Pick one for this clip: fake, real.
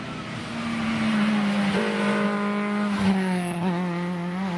real